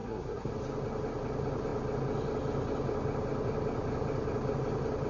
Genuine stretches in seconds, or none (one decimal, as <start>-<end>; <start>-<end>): 0.5-5.1